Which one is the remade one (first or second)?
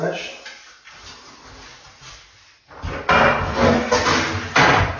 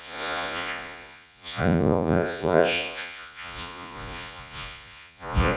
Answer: second